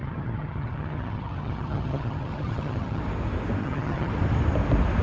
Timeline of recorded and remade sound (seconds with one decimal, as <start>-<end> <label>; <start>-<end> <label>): 0.0-3.0 remade; 3.0-3.6 recorded; 3.6-4.1 remade; 4.1-5.0 recorded